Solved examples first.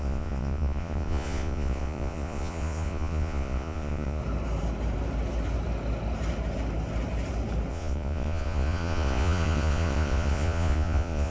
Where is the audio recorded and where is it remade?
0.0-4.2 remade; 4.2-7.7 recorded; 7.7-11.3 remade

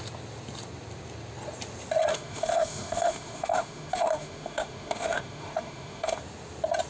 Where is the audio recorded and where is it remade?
0.0-2.1 recorded; 2.1-6.2 remade; 6.2-6.9 recorded